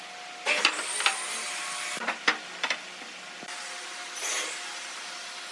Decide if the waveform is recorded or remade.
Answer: recorded